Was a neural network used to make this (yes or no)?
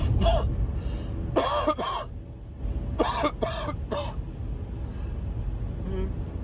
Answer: no